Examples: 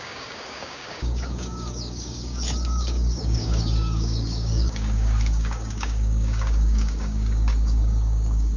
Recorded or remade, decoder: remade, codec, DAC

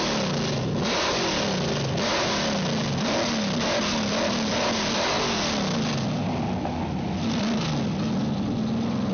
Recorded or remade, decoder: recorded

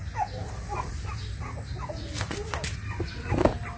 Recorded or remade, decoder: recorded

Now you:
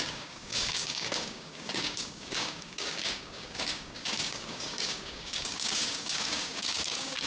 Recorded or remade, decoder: remade, codec, DAC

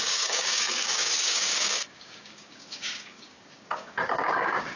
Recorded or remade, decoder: remade, codec, DAC